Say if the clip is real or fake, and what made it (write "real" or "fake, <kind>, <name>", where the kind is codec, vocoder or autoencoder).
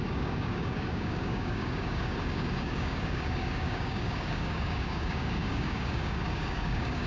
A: fake, codec, DAC